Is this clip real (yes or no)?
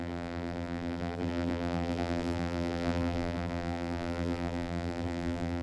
no